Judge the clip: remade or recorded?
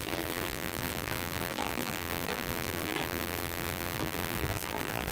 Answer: remade